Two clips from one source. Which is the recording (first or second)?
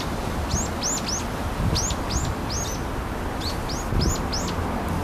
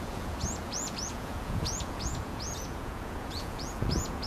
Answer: first